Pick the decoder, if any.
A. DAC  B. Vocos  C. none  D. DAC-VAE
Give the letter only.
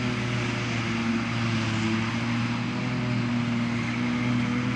C